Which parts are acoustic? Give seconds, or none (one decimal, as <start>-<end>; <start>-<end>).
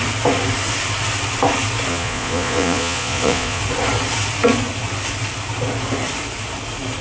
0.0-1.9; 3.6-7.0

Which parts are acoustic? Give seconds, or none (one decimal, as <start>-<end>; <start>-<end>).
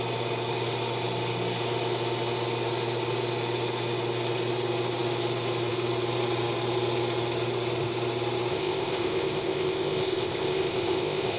0.0-8.5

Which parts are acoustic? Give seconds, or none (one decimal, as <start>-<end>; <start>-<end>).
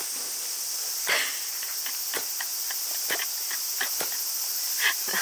0.0-2.5; 3.7-5.2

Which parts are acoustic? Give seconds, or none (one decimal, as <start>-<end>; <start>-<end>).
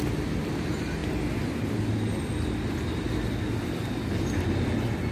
0.0-5.1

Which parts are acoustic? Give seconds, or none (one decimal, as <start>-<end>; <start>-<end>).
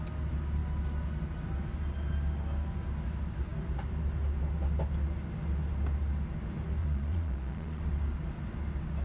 0.0-6.8; 7.8-9.0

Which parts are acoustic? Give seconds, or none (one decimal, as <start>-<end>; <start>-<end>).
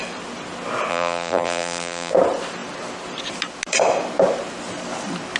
0.0-0.9; 2.1-5.4